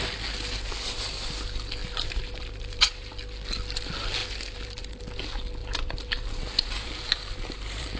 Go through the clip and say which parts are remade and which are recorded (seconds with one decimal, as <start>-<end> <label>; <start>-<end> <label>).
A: 0.0-1.8 recorded; 1.8-3.1 remade; 3.1-4.2 recorded; 4.2-5.0 remade; 5.0-5.6 recorded; 5.6-8.0 remade